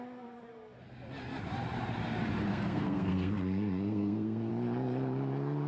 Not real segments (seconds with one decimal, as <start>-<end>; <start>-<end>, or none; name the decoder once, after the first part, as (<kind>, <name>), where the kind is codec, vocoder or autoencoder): 2.5-4.5 (codec, SNAC)